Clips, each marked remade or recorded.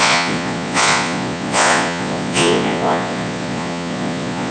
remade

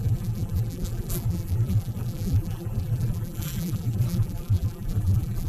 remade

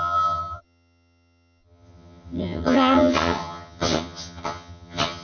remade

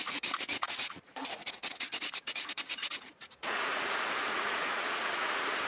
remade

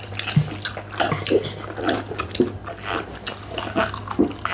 recorded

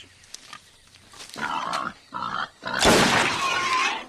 recorded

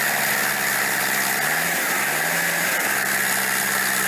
recorded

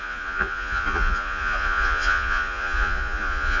remade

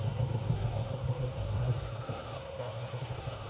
remade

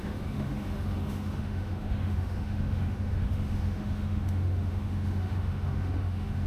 remade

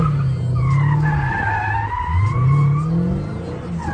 recorded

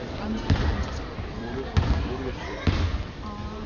recorded